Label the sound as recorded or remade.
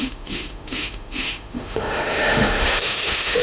remade